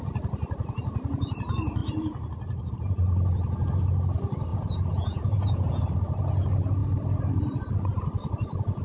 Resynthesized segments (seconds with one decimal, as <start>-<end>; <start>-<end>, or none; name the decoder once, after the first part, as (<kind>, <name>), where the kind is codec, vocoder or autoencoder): 4.5-5.8 (vocoder, Vocos)